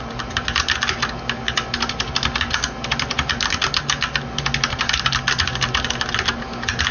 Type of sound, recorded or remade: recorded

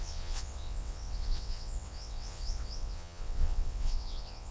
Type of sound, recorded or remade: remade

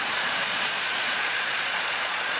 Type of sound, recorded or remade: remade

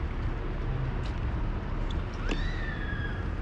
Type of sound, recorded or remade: recorded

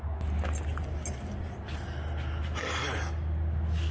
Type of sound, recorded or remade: recorded